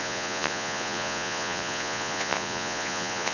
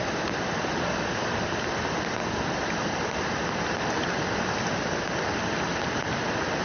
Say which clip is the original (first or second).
second